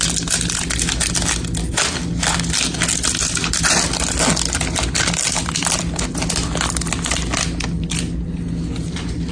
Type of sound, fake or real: real